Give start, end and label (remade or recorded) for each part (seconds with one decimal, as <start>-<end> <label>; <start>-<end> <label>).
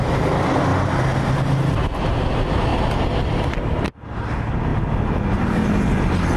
0.0-6.4 recorded